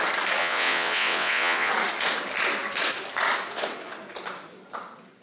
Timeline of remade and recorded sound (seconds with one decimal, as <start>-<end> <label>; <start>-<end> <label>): 0.0-0.4 recorded; 0.4-1.7 remade; 1.7-5.2 recorded